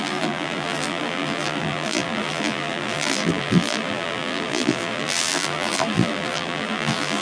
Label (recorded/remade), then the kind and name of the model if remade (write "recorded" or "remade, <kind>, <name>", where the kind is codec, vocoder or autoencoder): remade, vocoder, BigVGAN v2